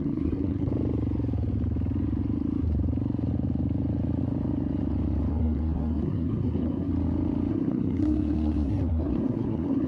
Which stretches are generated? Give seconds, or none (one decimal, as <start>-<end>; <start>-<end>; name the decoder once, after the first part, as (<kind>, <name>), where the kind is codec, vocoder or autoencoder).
0.0-0.7 (codec, SNAC); 5.3-6.9; 7.5-9.9